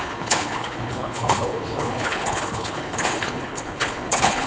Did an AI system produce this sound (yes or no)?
yes